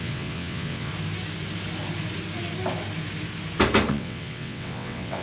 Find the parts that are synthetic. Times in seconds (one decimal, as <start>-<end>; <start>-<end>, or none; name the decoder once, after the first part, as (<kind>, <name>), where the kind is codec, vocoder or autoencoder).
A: 0.0-0.9 (vocoder, WaveNeXt); 3.9-5.2